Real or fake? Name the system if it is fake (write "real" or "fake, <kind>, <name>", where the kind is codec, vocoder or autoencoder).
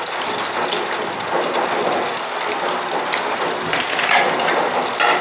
real